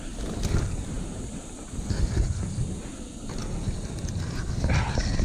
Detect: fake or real real